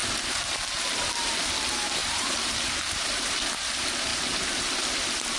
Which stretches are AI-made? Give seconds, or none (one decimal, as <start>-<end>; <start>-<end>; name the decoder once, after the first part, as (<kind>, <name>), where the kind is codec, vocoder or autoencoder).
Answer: 0.0-1.3 (vocoder, BigVGAN v2); 2.0-3.3; 4.1-4.7